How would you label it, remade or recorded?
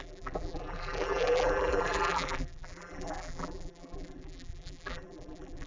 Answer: remade